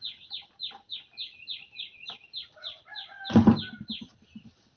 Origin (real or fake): real